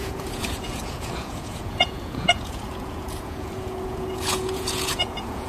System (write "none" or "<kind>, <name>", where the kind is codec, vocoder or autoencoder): vocoder, Vocos